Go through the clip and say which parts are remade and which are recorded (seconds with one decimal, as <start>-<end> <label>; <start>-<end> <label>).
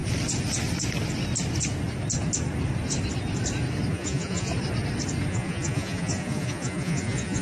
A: 0.0-3.9 recorded; 3.9-4.5 remade; 4.5-5.3 recorded; 5.3-7.4 remade